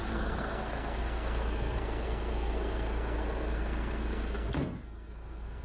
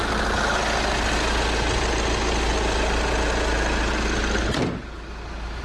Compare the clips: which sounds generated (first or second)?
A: first